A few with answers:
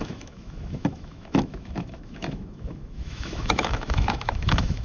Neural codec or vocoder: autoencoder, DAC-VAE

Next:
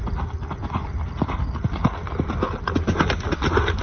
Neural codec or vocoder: none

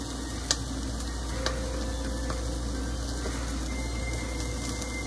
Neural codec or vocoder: none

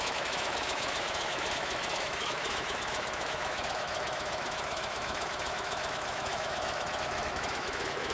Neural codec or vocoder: autoencoder, DAC-VAE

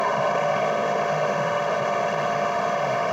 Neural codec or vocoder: autoencoder, DAC-VAE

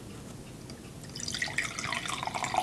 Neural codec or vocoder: none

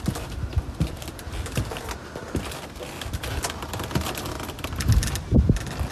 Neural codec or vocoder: none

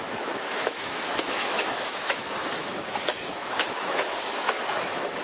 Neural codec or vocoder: autoencoder, DAC-VAE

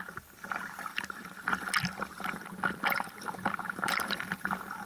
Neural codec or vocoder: none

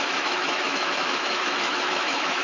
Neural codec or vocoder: autoencoder, DAC-VAE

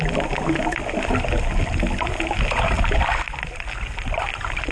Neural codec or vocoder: none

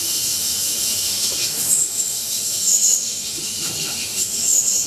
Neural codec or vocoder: autoencoder, DAC-VAE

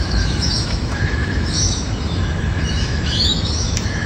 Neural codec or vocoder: autoencoder, DAC-VAE